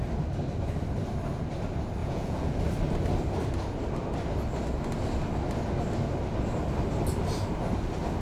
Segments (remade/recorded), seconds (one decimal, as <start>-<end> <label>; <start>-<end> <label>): 0.0-2.0 recorded; 2.0-2.6 remade; 2.6-8.2 recorded